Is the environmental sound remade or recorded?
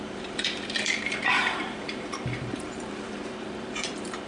remade